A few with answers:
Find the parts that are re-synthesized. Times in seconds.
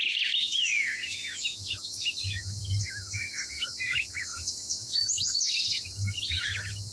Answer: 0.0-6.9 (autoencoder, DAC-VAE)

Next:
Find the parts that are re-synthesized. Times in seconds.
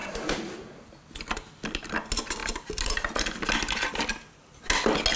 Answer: none